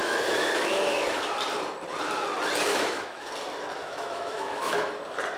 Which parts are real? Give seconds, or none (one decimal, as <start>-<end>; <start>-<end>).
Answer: 1.3-2.7; 3.3-3.8; 4.9-5.4